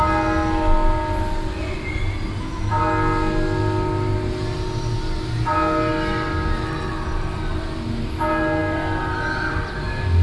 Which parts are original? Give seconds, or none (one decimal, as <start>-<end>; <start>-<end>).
0.0-10.2